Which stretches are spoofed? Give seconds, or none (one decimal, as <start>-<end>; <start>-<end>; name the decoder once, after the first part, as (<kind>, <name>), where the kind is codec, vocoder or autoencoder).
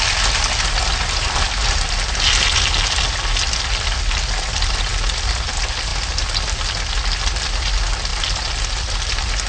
none